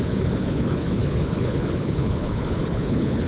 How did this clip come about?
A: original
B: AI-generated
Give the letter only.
B